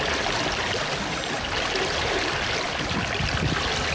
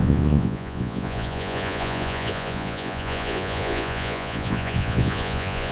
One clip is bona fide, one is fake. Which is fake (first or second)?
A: second